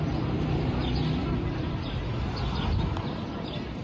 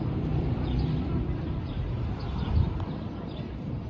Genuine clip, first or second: first